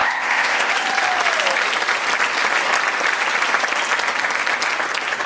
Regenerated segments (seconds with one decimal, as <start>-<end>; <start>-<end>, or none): 0.0-0.7